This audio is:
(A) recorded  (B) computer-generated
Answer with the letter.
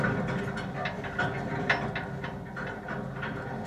A